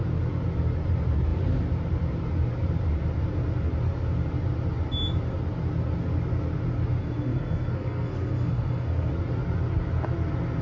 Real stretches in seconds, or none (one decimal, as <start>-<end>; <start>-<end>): 0.0-7.0; 9.1-10.6